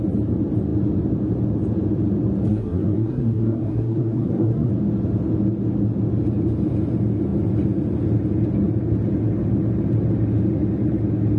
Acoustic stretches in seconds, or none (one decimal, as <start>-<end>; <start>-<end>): 0.0-2.5; 4.7-11.4